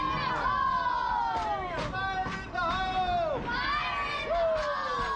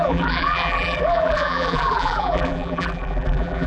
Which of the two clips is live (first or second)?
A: first